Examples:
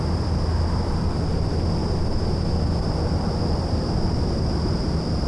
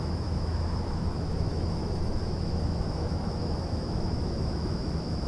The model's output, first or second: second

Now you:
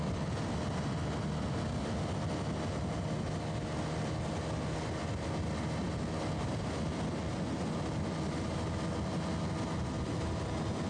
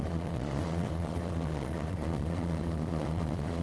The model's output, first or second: second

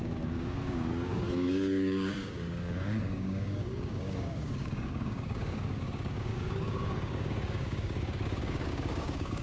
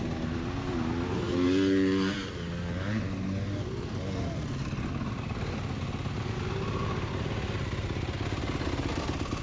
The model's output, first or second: first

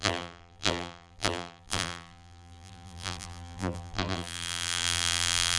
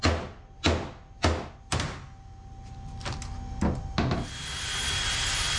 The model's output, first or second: first